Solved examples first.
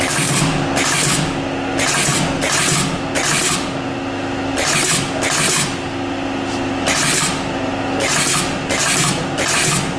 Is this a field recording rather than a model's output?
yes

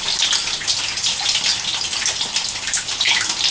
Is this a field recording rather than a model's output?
yes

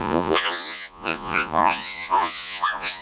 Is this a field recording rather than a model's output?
no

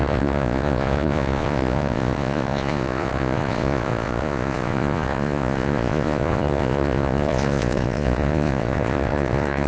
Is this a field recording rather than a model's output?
no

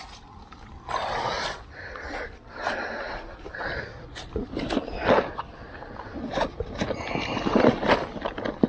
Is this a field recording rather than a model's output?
yes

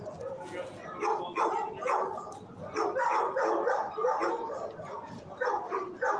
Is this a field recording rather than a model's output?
yes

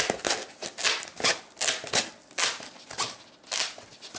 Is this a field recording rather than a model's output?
yes